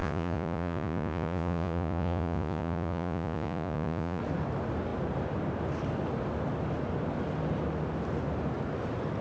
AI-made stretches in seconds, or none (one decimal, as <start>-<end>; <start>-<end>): 0.0-4.2

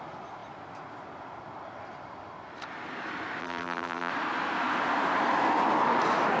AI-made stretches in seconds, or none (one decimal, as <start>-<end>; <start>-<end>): 3.4-4.1